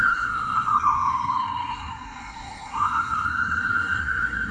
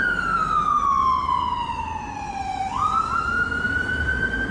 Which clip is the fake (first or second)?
first